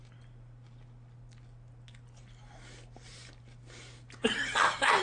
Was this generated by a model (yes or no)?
no